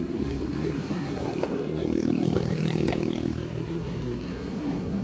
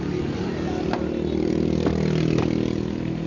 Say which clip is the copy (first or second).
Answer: first